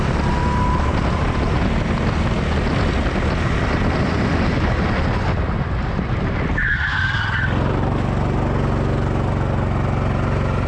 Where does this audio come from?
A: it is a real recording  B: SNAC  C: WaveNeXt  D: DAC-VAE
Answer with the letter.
A